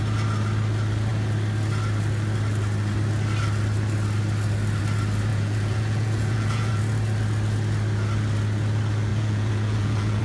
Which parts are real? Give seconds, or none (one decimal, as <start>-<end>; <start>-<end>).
0.0-5.3; 6.8-9.1

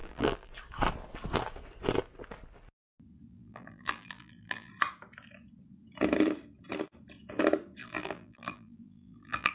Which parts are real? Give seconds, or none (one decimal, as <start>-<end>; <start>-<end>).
0.5-3.3; 4.7-7.8